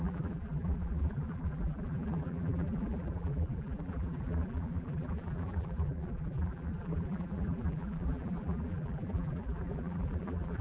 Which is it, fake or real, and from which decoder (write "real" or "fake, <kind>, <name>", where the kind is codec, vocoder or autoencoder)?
fake, vocoder, BigVGAN v2